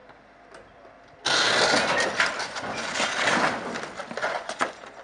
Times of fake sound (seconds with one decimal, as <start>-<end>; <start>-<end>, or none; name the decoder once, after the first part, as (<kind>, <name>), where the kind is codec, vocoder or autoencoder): 2.4-3.0 (vocoder, Vocos); 4.2-5.0